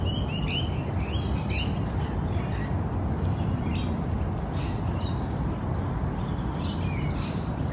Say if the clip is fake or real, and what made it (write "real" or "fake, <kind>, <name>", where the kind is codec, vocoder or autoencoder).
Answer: real